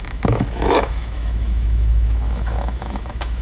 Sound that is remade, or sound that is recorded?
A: remade